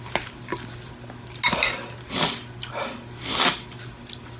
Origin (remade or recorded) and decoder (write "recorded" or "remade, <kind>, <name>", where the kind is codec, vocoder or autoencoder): recorded